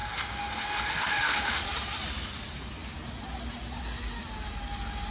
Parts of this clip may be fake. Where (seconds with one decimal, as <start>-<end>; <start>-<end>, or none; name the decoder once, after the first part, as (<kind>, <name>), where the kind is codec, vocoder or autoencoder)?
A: 0.0-1.6 (autoencoder, DAC-VAE)